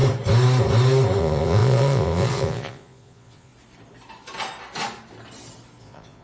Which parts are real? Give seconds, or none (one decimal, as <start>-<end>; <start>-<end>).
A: 0.0-1.2; 3.5-5.8